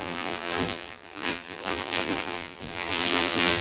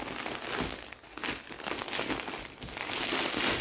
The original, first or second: second